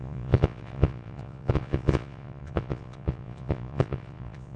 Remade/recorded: remade